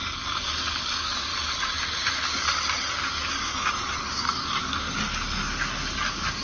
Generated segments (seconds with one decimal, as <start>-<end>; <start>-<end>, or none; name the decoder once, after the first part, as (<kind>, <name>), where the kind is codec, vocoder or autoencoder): 0.6-1.3 (codec, DAC); 2.9-3.5; 4.1-6.4